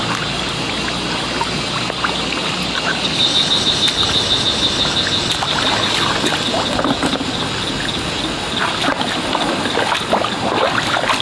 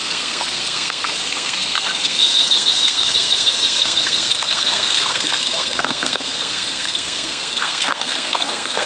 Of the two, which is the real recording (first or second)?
first